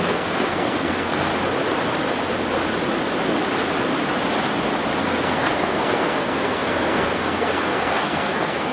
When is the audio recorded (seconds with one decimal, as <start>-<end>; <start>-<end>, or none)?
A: 1.3-5.0